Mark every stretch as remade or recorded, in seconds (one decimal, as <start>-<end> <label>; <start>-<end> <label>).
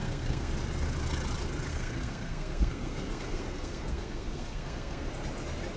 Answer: 0.0-0.5 remade; 0.5-1.7 recorded; 1.7-5.1 remade; 5.1-5.8 recorded